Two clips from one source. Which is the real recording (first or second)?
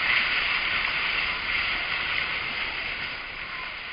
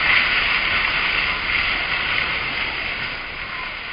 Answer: second